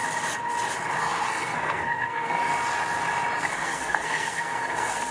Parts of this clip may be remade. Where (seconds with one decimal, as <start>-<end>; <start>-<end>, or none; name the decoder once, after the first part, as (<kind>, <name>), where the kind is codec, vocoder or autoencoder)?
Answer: 1.0-2.5 (codec, SNAC); 3.4-5.1